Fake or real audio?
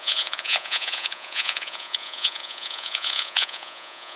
fake